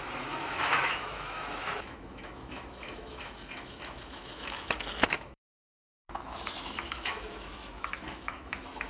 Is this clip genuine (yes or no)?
no